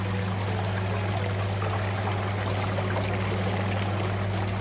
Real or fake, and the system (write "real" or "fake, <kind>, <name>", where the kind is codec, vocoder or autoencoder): real